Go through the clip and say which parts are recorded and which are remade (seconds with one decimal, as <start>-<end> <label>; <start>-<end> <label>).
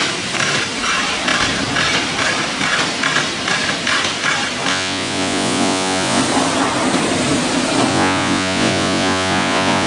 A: 0.0-4.7 recorded; 4.7-6.2 remade; 6.2-7.9 recorded; 7.9-9.9 remade